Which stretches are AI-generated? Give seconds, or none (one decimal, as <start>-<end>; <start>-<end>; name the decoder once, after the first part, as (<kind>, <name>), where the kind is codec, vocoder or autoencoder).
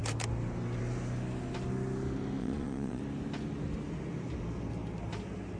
2.4-3.0 (vocoder, Vocos)